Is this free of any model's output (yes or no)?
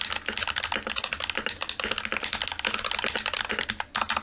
yes